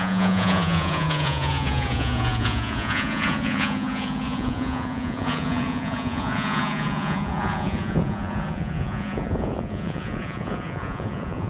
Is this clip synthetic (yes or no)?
yes